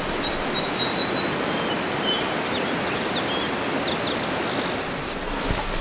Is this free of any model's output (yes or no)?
yes